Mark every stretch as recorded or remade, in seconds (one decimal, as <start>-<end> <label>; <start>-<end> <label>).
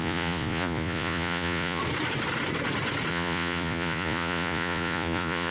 0.0-1.8 remade; 1.8-3.1 recorded; 3.1-5.5 remade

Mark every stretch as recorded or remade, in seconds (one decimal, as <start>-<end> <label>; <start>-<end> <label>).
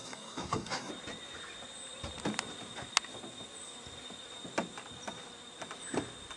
0.0-0.9 remade; 0.9-6.4 recorded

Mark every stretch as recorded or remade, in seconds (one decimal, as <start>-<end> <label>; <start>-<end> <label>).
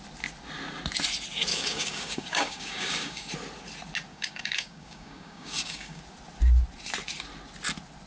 0.0-1.5 recorded; 1.5-3.3 remade; 3.3-4.1 recorded; 4.1-6.0 remade; 6.0-8.1 recorded